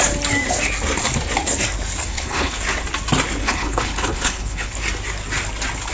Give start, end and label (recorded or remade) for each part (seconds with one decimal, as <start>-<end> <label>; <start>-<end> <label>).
0.0-2.1 recorded; 2.1-2.6 remade; 2.6-3.4 recorded; 3.4-4.7 remade; 4.7-5.9 recorded